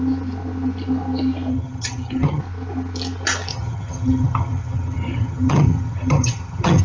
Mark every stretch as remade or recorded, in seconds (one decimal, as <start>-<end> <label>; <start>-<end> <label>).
0.0-1.5 recorded; 1.5-2.4 remade; 2.4-3.5 recorded; 3.5-6.8 remade